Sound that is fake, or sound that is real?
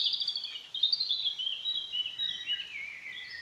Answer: real